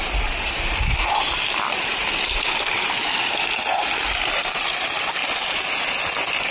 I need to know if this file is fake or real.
real